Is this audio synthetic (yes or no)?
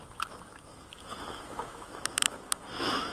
yes